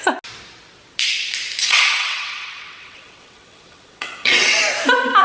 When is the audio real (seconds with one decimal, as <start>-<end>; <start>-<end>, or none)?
0.0-1.6; 4.6-5.2